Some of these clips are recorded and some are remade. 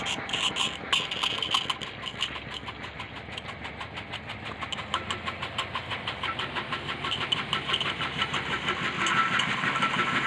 recorded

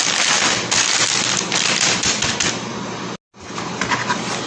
recorded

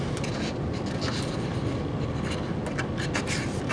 recorded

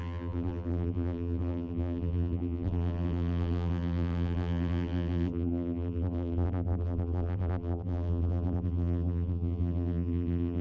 remade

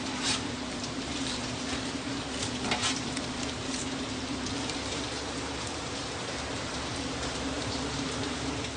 remade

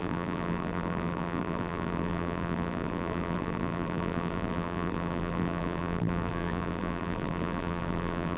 remade